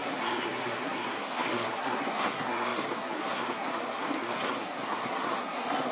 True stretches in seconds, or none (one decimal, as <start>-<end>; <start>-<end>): none